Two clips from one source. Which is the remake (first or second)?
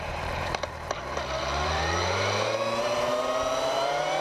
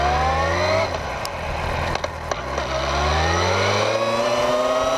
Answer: first